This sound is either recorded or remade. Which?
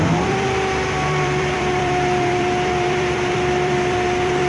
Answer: remade